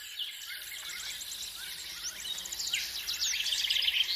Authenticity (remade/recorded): recorded